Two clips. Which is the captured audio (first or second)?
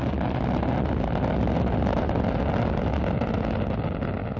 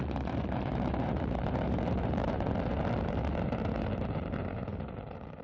first